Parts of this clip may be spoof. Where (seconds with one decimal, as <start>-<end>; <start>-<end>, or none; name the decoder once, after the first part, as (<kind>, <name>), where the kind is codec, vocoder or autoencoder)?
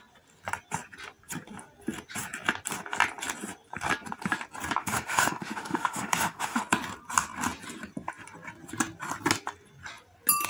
4.8-6.6 (autoencoder, DAC-VAE)